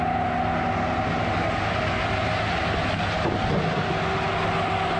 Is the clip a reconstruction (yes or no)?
no